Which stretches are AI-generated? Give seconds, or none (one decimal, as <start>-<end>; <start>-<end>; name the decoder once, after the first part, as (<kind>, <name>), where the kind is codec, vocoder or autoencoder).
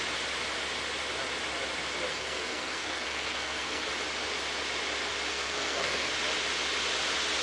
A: 2.1-3.9 (codec, SNAC); 5.3-6.1